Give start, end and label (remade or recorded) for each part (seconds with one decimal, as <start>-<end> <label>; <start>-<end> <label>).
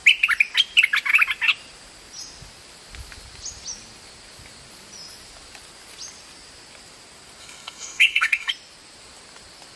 0.0-7.4 recorded; 7.4-8.5 remade; 8.5-9.8 recorded